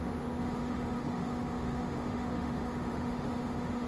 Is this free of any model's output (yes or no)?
no